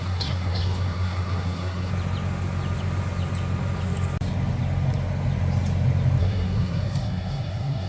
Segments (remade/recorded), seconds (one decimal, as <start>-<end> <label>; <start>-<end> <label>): 0.0-1.9 remade; 1.9-6.2 recorded; 6.2-7.9 remade